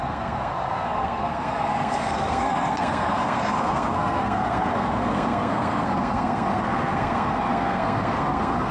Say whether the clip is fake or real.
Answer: fake